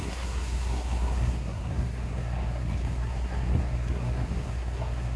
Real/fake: fake